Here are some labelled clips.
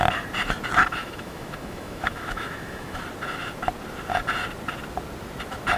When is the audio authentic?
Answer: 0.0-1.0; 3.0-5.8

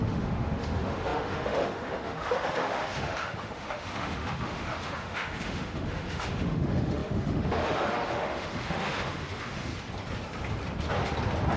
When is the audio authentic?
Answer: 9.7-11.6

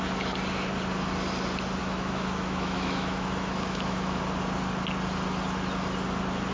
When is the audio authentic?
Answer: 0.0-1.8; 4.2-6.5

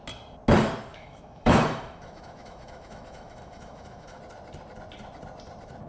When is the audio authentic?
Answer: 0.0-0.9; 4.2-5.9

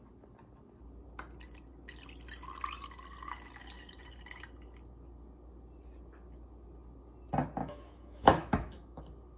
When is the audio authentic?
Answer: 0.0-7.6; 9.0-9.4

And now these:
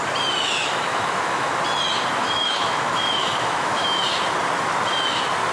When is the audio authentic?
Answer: 0.0-0.9; 1.5-2.2; 4.0-5.5

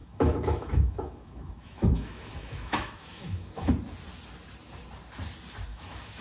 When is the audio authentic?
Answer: 3.7-5.7

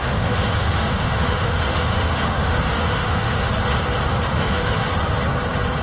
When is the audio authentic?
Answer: 3.5-4.3; 4.9-5.8